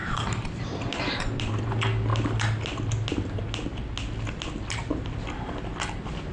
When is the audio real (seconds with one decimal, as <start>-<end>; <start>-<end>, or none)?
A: 1.6-6.3